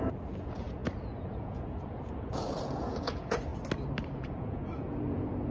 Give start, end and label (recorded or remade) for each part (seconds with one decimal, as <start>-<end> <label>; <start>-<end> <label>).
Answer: 0.0-3.5 remade; 3.5-4.1 recorded; 4.1-5.5 remade